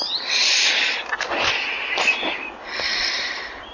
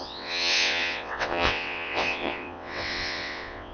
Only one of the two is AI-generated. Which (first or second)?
second